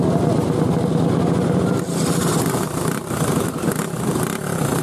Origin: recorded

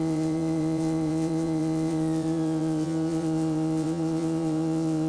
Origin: remade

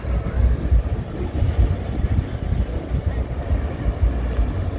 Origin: recorded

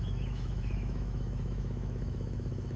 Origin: remade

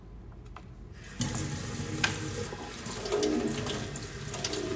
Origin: recorded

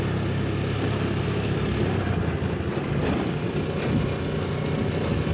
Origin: recorded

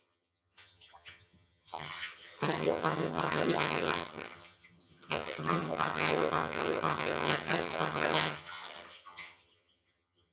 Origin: remade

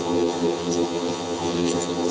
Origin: remade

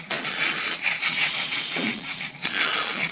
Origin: remade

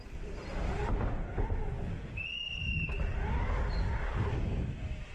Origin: recorded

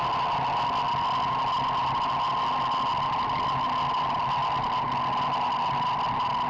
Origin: recorded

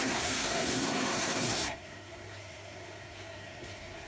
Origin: remade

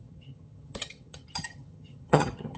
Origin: remade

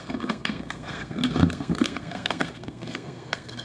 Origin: remade